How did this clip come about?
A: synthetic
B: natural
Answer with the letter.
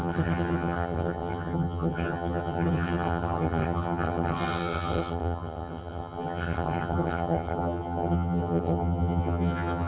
A